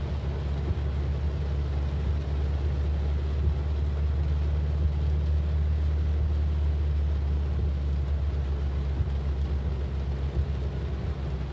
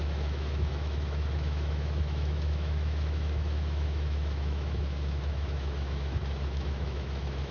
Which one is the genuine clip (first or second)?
first